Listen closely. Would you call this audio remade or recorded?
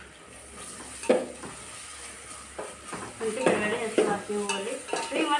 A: recorded